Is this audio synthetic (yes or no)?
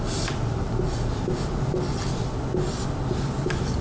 no